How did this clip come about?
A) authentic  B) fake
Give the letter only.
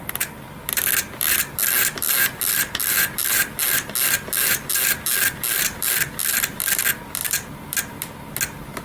A